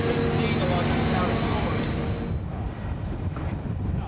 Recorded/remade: recorded